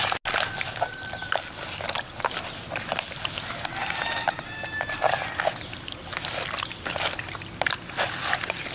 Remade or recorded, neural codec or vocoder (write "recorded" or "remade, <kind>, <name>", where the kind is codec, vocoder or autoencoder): recorded